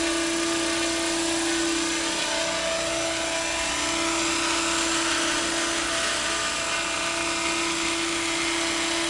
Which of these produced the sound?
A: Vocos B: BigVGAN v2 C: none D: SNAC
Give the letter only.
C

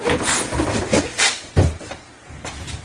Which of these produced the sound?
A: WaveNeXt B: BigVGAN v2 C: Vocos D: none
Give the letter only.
B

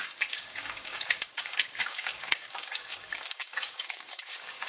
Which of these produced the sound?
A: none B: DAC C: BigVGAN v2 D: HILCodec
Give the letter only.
B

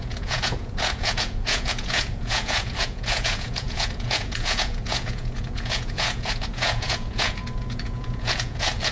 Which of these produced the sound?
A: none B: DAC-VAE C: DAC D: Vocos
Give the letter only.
D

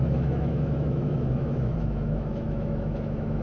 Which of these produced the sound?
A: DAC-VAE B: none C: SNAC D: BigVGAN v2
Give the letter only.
A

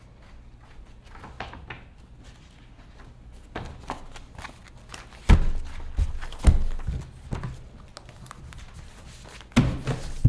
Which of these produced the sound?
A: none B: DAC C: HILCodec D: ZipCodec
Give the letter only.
A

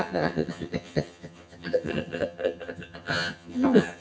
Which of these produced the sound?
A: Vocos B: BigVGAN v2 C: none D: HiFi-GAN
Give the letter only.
D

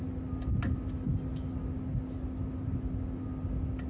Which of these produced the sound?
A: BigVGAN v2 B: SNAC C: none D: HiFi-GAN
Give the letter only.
C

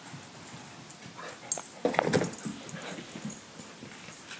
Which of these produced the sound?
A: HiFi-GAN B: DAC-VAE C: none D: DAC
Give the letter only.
C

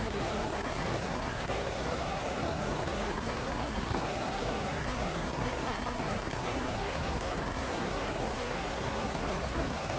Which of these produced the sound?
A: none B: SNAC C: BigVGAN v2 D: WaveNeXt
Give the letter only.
B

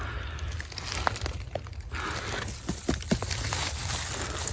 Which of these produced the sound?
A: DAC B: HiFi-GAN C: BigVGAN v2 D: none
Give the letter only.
D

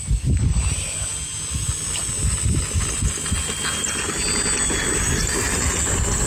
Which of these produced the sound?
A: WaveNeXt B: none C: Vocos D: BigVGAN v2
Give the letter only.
B